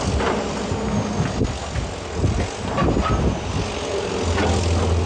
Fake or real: real